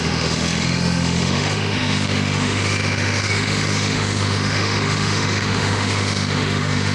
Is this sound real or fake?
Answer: fake